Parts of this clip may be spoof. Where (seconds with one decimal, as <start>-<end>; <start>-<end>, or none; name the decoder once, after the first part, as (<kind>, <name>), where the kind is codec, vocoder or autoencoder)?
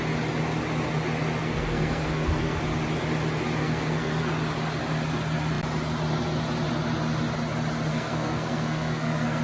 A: 1.4-2.6 (codec, SNAC); 3.6-4.3; 7.9-9.4